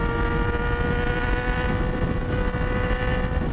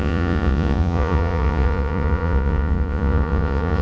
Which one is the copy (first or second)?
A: second